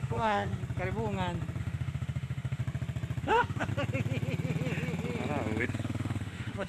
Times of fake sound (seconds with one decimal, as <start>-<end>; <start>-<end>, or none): 0.0-0.6; 1.6-2.6; 3.2-3.7; 5.6-6.7